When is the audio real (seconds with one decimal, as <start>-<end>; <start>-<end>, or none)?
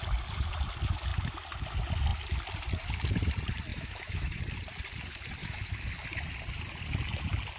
0.0-3.7; 4.4-5.4; 5.9-7.6